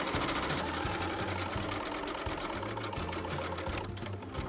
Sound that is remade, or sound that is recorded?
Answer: recorded